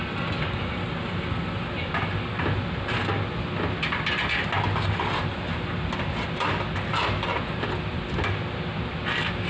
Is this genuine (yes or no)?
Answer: yes